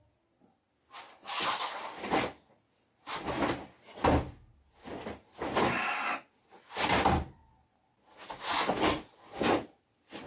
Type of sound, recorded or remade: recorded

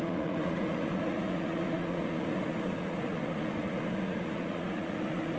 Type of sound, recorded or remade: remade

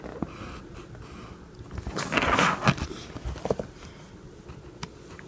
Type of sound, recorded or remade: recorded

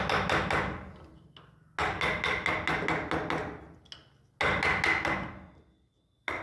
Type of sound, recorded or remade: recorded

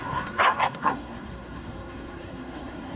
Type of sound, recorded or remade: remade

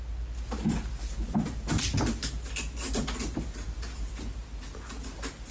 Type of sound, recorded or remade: recorded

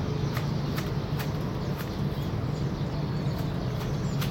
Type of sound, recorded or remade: recorded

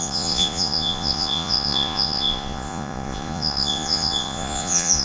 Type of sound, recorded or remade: remade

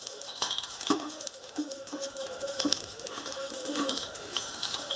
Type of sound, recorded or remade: remade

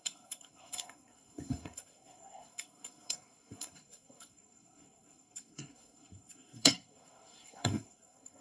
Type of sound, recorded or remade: remade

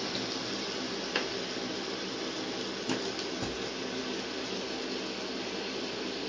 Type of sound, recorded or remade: recorded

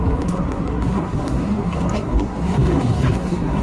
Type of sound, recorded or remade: remade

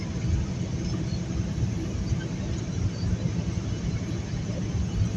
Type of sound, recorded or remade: recorded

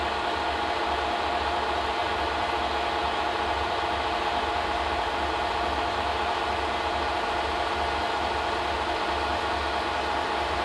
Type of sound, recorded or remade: recorded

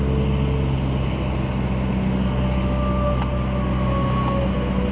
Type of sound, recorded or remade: recorded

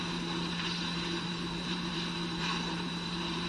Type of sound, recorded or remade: remade